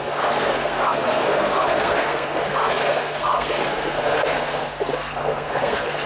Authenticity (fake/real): fake